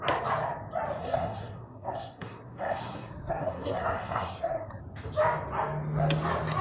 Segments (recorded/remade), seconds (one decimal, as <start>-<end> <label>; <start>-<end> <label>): 0.0-1.0 recorded; 1.0-4.8 remade; 4.8-6.6 recorded